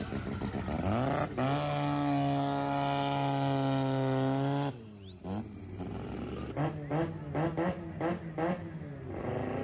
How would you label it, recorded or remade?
recorded